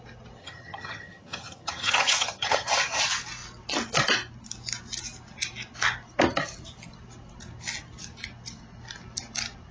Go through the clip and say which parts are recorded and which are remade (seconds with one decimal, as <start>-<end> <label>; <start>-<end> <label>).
0.0-0.4 recorded; 0.4-3.0 remade; 3.0-9.7 recorded